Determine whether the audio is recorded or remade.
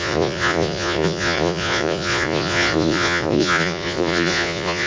remade